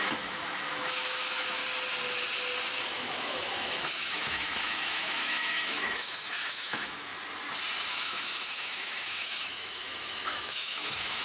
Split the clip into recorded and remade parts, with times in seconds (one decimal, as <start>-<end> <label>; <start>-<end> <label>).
0.0-1.6 remade; 1.6-2.8 recorded; 2.8-7.1 remade; 7.1-7.9 recorded; 7.9-11.2 remade